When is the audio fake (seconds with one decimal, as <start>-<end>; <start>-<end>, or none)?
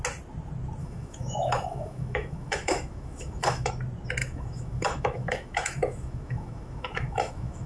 0.8-3.7; 4.2-7.7